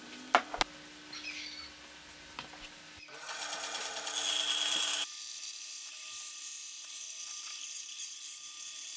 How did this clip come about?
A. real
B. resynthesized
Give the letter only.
A